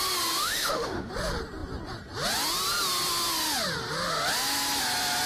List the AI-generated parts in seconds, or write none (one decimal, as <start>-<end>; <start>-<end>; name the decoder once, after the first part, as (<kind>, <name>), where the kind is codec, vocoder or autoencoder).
0.4-1.1 (autoencoder, DAC-VAE)